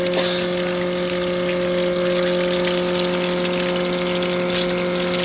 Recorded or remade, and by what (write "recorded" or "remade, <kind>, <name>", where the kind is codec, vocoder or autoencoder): recorded